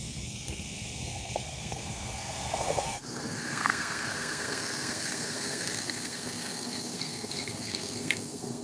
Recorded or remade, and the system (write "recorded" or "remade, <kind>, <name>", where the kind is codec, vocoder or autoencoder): remade, codec, SNAC